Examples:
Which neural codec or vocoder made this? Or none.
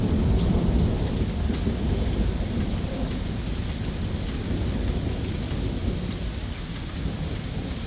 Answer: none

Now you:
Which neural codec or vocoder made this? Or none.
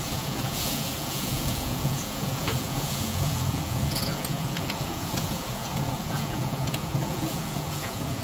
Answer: vocoder, Vocos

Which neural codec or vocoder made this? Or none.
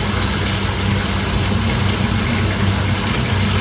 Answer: none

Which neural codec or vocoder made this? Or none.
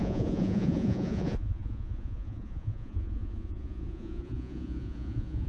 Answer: vocoder, Vocos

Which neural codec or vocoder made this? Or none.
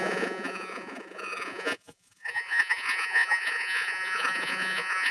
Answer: vocoder, Vocos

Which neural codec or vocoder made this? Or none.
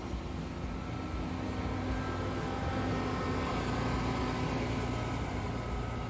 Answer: none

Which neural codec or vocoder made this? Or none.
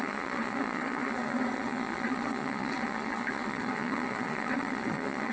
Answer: vocoder, Vocos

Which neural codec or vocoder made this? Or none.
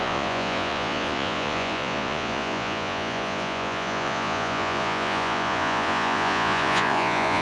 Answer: vocoder, Vocos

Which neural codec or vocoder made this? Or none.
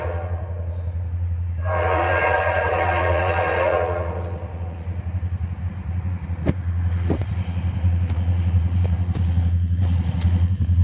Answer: vocoder, Vocos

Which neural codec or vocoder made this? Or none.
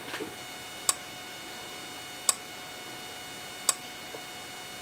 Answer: none